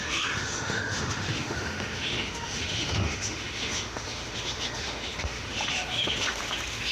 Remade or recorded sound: remade